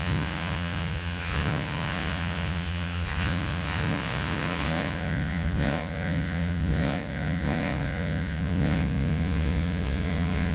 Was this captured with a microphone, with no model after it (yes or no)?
no